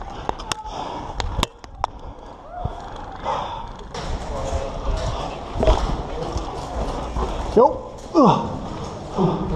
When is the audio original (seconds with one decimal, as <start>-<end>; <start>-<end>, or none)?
0.0-9.6

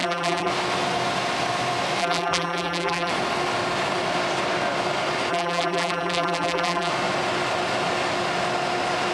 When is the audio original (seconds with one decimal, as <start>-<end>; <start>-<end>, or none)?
0.5-2.0; 3.1-5.3; 6.9-9.1

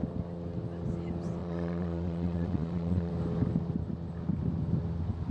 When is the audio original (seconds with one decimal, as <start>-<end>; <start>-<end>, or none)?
0.0-1.4; 3.1-5.3

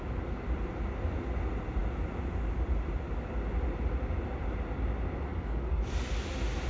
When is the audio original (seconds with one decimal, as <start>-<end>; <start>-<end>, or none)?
0.0-5.3; 5.9-6.7

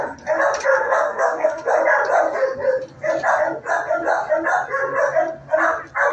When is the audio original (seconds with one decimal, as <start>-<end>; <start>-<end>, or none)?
0.0-0.8; 1.7-6.1